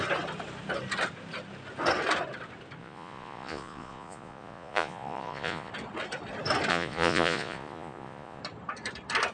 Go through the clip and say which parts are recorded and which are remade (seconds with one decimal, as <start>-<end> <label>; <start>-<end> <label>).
0.0-2.8 recorded; 2.8-5.7 remade; 5.7-6.7 recorded; 6.7-8.4 remade; 8.4-9.3 recorded